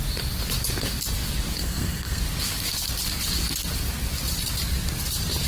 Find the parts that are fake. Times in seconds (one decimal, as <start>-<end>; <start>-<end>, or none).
1.6-2.2